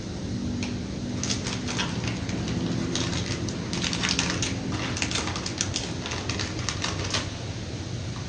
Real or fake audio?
real